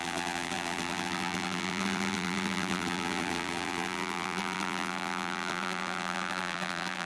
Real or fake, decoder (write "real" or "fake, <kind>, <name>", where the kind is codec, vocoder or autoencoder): fake, vocoder, BigVGAN v2